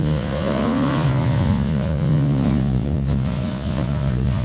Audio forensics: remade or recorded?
remade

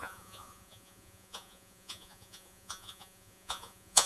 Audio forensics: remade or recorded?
remade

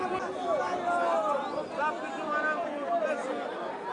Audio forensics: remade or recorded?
recorded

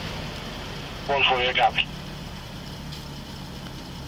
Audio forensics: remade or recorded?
recorded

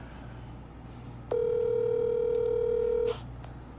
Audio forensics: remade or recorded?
recorded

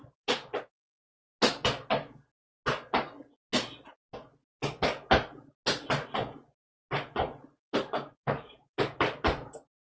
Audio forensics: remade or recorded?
recorded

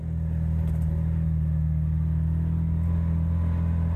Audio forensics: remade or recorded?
recorded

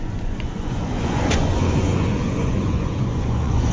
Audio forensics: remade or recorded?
remade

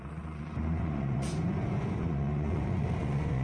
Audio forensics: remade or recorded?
remade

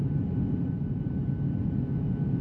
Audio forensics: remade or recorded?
recorded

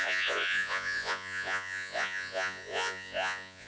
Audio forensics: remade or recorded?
remade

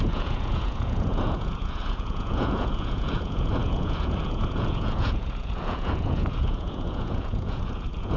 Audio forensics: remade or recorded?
remade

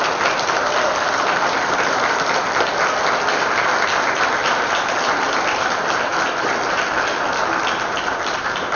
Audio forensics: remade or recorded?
recorded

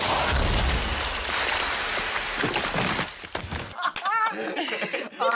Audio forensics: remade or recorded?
recorded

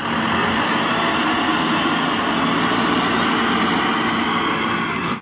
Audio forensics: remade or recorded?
recorded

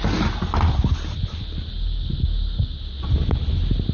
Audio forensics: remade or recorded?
recorded